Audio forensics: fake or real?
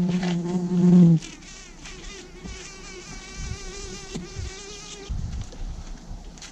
fake